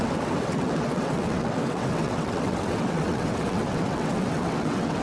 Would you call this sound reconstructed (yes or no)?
yes